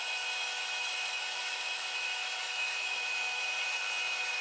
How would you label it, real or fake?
fake